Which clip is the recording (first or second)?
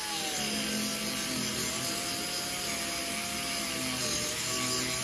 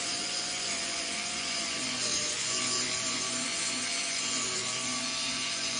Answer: first